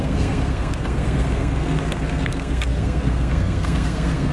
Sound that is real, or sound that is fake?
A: fake